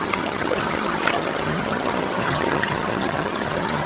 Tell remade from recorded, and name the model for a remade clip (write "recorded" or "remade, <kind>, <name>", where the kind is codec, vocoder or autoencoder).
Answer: remade, vocoder, HiFi-GAN